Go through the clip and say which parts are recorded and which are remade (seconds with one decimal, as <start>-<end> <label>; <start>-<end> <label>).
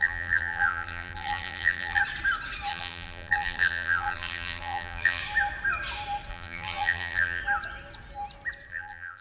0.0-2.0 remade; 2.0-2.7 recorded; 2.7-5.2 remade; 5.2-6.3 recorded; 6.3-7.4 remade; 7.4-8.7 recorded; 8.7-9.2 remade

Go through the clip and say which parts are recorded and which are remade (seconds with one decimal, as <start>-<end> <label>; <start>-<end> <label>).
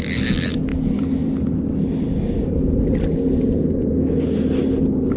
0.0-5.2 recorded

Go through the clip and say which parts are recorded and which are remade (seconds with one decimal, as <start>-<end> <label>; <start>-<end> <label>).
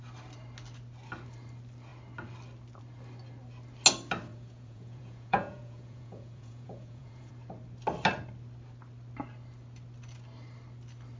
0.0-4.3 recorded; 4.3-7.3 remade; 7.3-11.2 recorded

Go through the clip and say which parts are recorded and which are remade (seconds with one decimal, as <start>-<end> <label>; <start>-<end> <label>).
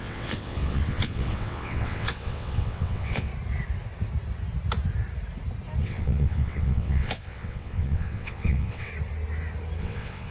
0.0-3.3 remade; 3.3-5.8 recorded; 5.8-8.9 remade; 8.9-9.8 recorded; 9.8-10.3 remade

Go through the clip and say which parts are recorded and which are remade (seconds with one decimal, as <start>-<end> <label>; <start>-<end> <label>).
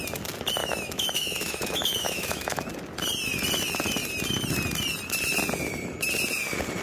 0.0-0.6 recorded; 0.6-2.6 remade; 2.6-6.8 recorded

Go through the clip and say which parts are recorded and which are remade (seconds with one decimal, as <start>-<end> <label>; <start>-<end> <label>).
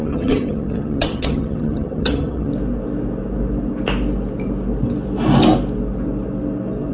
0.0-2.5 remade; 2.5-6.9 recorded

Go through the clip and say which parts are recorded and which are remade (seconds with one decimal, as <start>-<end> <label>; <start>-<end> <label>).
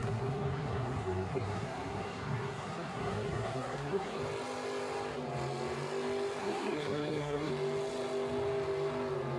0.0-4.2 remade; 4.2-6.4 recorded; 6.4-7.5 remade; 7.5-9.4 recorded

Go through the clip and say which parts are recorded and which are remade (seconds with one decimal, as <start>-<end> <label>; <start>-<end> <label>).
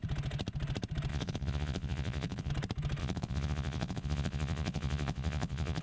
0.0-1.1 recorded; 1.1-2.5 remade; 2.5-3.0 recorded; 3.0-5.8 remade